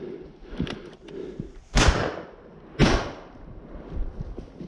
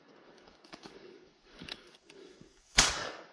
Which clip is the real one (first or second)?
first